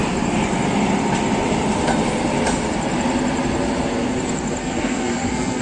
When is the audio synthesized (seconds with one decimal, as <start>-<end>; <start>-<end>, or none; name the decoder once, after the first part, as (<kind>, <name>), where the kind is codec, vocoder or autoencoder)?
4.6-5.6 (codec, SNAC)